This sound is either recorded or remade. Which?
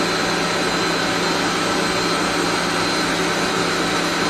recorded